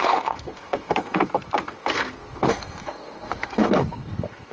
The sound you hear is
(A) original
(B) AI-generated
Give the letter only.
B